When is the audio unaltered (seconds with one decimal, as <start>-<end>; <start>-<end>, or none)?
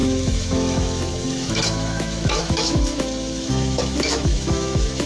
none